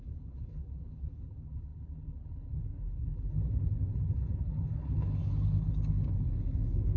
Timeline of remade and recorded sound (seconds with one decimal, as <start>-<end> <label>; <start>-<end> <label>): 0.0-7.0 remade